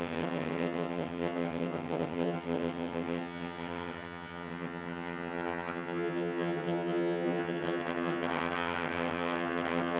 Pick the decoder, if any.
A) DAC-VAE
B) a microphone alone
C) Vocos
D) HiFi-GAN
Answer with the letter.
D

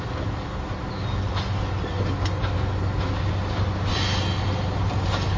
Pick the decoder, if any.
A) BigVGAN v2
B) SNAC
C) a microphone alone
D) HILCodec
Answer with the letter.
C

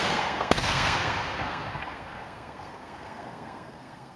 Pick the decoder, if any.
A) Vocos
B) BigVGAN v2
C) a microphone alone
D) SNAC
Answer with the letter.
D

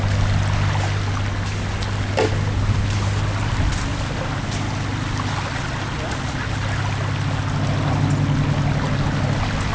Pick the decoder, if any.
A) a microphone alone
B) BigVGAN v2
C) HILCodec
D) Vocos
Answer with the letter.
A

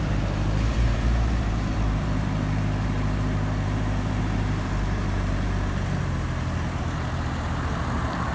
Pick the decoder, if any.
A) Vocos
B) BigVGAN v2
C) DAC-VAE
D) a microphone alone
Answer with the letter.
B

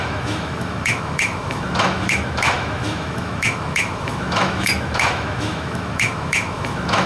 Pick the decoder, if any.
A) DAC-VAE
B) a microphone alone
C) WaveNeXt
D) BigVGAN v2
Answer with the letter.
A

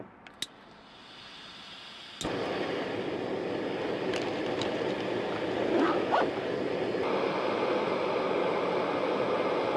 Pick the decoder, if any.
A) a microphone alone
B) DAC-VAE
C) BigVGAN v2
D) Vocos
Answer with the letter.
A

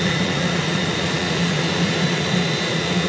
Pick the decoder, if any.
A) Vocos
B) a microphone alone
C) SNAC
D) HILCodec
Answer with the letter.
A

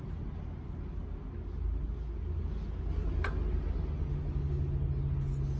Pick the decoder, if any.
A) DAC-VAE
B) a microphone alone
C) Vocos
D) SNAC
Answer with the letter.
B